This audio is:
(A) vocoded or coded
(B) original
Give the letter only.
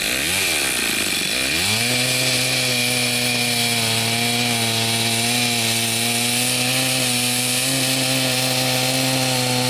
B